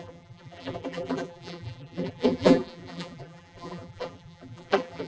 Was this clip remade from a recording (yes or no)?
yes